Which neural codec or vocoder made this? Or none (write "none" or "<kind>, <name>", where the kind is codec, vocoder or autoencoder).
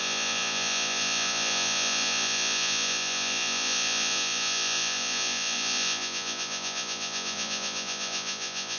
vocoder, Vocos